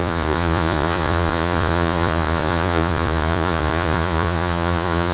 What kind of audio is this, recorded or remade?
remade